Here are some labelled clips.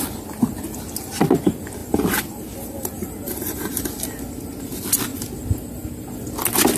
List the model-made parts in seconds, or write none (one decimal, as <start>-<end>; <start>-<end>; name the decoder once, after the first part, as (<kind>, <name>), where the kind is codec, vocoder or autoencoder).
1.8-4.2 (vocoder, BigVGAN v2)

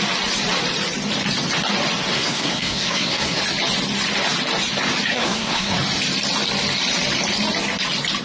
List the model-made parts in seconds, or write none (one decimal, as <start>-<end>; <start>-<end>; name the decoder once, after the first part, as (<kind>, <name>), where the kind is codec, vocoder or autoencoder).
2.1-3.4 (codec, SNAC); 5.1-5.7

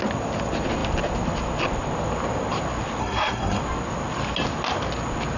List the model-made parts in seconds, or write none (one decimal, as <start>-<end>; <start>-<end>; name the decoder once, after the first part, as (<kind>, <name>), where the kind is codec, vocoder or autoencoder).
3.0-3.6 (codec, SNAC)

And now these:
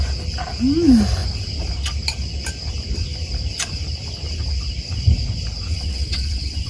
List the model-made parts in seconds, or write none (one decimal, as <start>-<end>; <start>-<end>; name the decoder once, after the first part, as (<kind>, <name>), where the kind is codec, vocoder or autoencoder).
5.7-6.7 (vocoder, WaveNeXt)

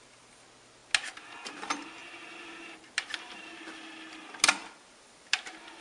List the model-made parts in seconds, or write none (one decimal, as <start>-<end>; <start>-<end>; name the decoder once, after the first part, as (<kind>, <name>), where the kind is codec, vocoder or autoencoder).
2.0-3.6 (vocoder, BigVGAN v2)

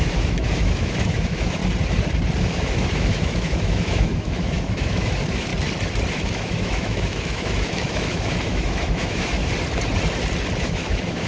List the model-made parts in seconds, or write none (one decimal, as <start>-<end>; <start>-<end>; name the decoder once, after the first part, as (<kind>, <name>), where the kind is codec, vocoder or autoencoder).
0.0-1.6 (autoencoder, DAC-VAE); 2.4-5.5; 6.1-9.4; 10.6-11.3

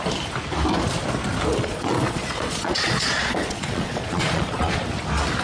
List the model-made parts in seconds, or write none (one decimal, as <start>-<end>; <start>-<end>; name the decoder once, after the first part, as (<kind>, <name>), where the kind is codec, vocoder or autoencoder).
1.6-4.8 (vocoder, Vocos)

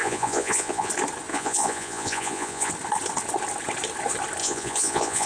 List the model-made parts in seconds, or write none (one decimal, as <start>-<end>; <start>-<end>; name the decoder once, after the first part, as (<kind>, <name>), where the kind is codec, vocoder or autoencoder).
0.0-0.9 (vocoder, Vocos); 1.3-2.7; 4.4-5.3